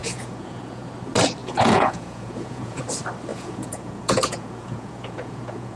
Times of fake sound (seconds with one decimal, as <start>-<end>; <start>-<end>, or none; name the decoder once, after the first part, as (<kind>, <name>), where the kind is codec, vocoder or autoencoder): 0.0-0.9 (vocoder, Vocos); 1.4-2.8; 3.3-5.8